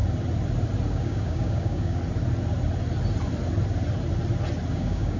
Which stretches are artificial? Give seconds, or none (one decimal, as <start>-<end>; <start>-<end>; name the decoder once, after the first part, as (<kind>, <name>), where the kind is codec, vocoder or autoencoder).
0.9-2.0 (codec, DAC); 4.7-5.2